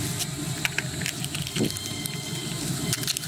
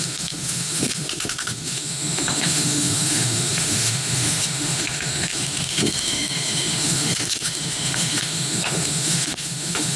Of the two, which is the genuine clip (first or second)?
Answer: first